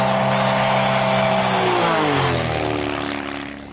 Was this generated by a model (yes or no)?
no